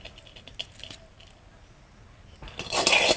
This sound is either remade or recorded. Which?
recorded